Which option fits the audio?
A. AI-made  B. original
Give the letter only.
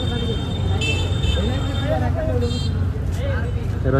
B